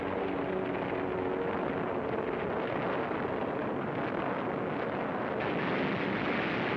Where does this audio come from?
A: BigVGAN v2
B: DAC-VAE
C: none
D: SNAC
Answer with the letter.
C